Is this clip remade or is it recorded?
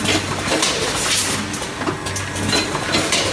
recorded